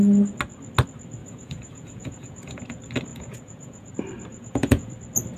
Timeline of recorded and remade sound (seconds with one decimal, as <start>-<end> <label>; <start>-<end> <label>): 0.0-1.2 recorded; 1.2-2.6 remade; 2.6-3.1 recorded; 3.1-3.9 remade; 3.9-4.3 recorded; 4.3-4.9 remade; 4.9-5.4 recorded